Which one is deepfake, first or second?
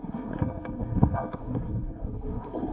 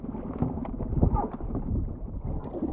first